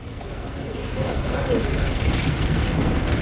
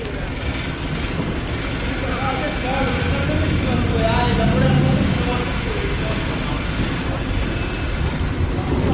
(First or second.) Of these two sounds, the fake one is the first